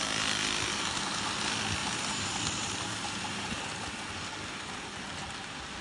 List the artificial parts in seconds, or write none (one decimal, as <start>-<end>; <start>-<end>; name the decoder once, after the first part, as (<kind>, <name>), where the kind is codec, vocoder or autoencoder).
1.8-4.1 (vocoder, BigVGAN v2)